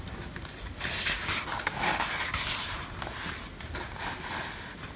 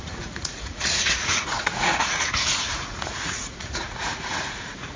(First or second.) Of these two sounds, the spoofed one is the second